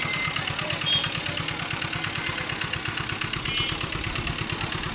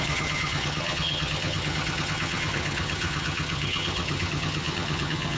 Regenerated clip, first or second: second